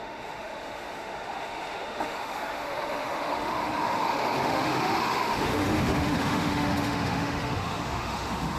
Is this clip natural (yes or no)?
no